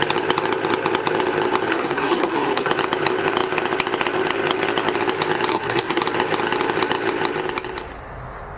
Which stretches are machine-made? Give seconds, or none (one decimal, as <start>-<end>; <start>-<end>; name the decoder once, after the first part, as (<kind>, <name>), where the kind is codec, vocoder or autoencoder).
1.7-2.7 (codec, SNAC); 5.5-6.0